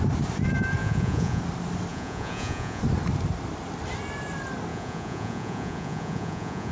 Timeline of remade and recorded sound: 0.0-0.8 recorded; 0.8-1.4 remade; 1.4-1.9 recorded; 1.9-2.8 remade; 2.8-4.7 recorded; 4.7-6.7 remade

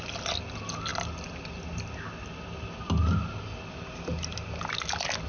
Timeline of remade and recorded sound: 0.0-5.3 recorded

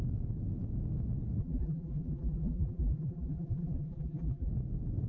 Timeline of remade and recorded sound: 0.0-1.4 recorded; 1.4-4.5 remade; 4.5-5.1 recorded

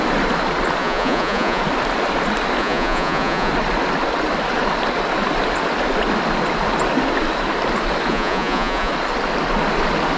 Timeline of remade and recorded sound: 0.0-0.8 recorded; 0.8-1.6 remade; 1.6-2.6 recorded; 2.6-3.5 remade; 3.5-8.1 recorded; 8.1-8.9 remade; 8.9-10.2 recorded